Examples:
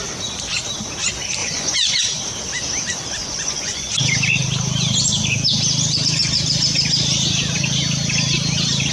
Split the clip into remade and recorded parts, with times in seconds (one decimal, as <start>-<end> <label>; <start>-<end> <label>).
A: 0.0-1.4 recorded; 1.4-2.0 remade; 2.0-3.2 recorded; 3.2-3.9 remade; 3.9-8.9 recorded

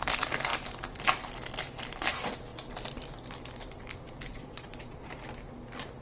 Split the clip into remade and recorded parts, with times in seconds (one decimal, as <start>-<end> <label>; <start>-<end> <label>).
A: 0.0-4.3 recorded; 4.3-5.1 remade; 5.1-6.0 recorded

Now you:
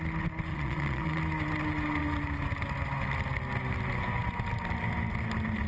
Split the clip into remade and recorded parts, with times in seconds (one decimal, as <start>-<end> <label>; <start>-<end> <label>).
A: 0.0-0.5 recorded; 0.5-1.2 remade; 1.2-5.7 recorded